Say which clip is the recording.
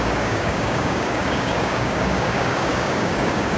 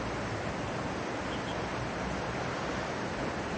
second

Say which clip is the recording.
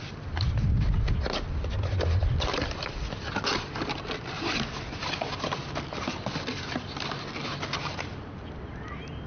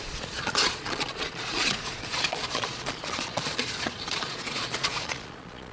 first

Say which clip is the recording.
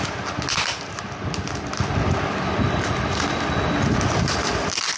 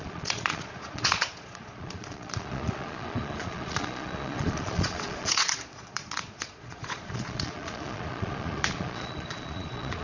first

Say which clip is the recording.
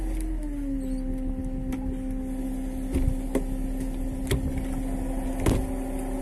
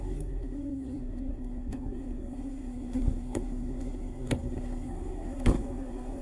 first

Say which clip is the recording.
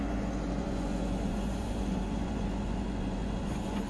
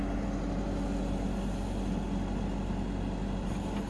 second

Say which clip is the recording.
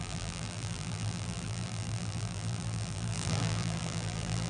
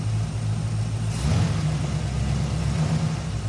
second